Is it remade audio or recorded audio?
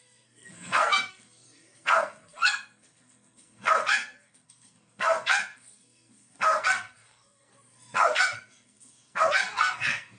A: remade